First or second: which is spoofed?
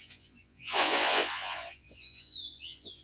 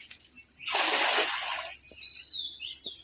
first